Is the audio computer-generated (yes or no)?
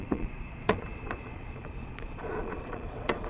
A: yes